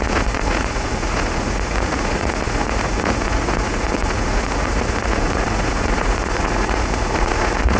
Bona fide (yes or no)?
no